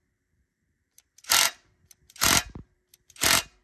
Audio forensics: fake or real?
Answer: fake